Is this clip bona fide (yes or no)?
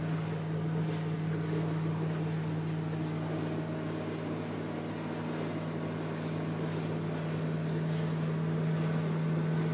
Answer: yes